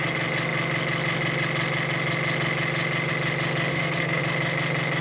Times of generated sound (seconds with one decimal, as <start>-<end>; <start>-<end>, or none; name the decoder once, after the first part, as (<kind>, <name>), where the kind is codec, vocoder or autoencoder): 3.7-4.2 (codec, SNAC)